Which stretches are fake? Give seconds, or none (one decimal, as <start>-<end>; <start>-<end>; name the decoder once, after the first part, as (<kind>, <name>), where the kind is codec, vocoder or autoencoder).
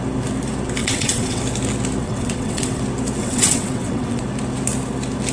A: 0.8-1.4 (vocoder, WaveNeXt); 2.0-2.8; 3.2-4.2